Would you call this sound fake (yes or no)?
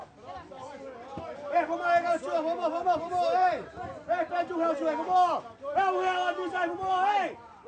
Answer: no